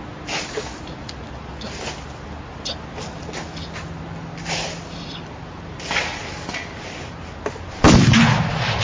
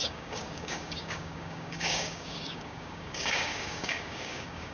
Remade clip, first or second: second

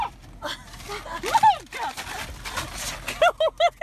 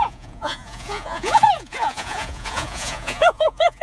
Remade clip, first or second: second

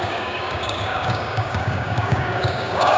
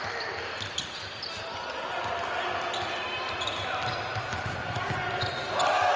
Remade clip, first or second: first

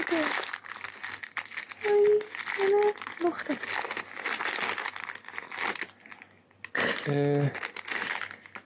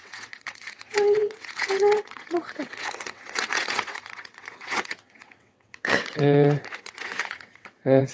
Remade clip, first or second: second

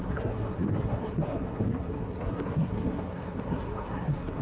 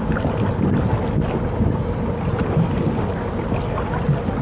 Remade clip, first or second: first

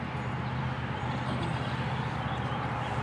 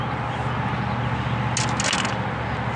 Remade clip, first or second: first